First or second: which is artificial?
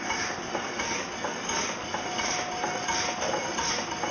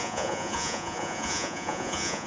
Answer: second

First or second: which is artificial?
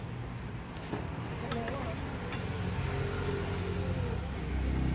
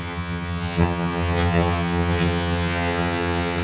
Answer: second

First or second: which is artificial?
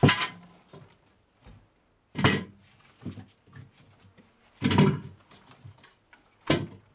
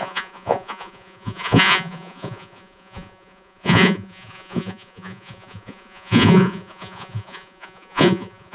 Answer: second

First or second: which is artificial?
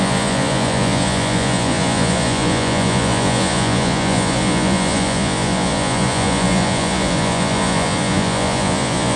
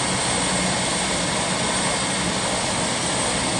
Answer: first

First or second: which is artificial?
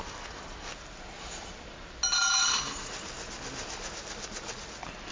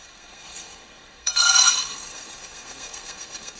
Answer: second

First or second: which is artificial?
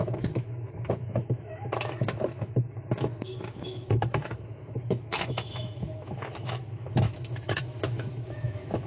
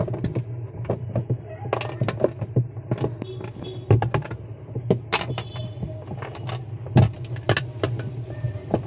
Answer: first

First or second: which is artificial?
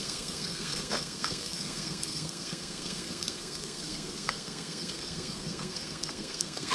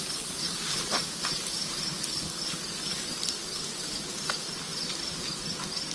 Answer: first